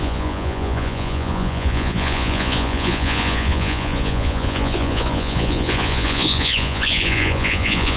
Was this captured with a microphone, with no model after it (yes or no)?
no